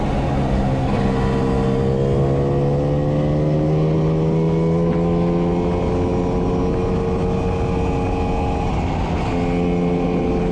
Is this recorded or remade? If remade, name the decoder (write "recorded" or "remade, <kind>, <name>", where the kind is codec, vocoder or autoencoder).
recorded